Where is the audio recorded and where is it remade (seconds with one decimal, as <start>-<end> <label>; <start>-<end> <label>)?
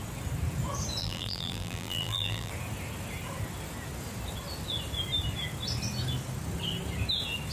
0.0-1.0 recorded; 1.0-2.5 remade; 2.5-7.5 recorded